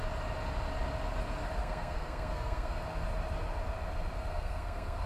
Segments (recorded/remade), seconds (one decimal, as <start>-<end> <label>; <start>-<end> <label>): 0.0-1.6 recorded; 1.6-2.8 remade; 2.8-4.3 recorded; 4.3-5.1 remade